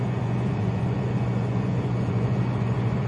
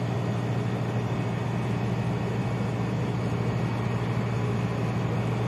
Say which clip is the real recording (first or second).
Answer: second